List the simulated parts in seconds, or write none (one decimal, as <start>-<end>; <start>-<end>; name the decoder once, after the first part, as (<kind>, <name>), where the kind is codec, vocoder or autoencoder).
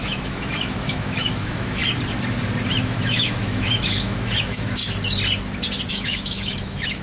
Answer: 0.0-1.8 (autoencoder, DAC-VAE); 2.7-4.8; 5.9-7.0